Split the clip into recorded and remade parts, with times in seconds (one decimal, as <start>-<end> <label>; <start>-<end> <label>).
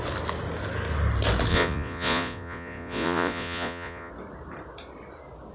0.0-1.5 recorded; 1.5-4.1 remade; 4.1-5.5 recorded